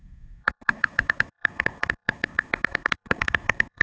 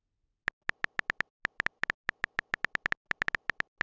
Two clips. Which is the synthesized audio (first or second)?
first